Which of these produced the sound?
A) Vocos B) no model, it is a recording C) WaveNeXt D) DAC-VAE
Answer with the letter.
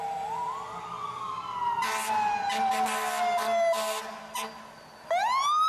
B